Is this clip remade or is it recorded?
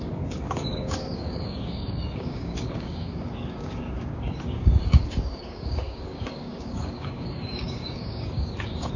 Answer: remade